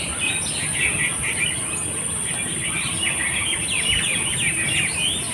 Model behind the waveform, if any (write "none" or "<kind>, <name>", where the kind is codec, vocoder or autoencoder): none